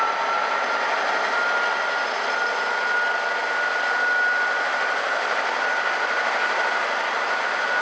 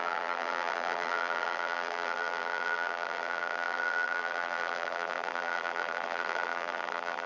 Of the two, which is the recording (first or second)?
first